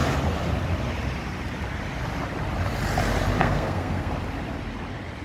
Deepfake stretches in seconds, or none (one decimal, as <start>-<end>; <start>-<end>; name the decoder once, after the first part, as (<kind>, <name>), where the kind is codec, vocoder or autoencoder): 3.4-4.1 (codec, SNAC)